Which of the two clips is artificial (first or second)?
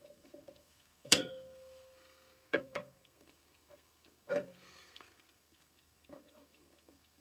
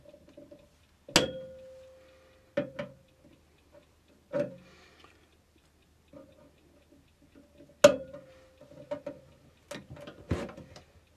first